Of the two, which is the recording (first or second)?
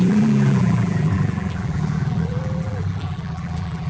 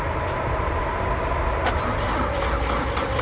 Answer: second